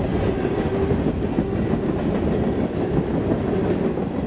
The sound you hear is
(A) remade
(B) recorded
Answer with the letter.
B